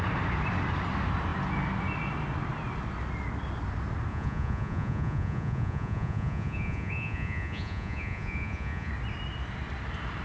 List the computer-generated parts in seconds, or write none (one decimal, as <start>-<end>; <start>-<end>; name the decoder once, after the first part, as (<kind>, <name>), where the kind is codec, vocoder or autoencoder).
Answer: 4.1-8.9 (vocoder, Vocos)